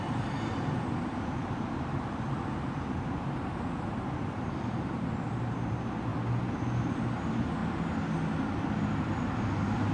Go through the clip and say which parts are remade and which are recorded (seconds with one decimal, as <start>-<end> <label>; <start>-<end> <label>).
0.0-6.1 remade; 6.1-6.8 recorded; 6.8-7.6 remade; 7.6-9.1 recorded; 9.1-9.9 remade